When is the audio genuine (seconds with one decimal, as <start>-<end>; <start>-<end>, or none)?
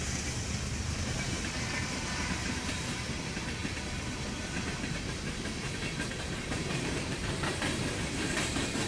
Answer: none